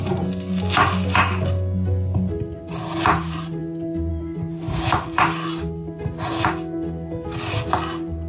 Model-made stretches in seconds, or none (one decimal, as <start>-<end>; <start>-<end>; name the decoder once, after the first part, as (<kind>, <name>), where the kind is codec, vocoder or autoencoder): none